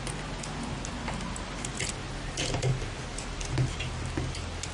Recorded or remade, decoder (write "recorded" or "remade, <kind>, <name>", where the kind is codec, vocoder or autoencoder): recorded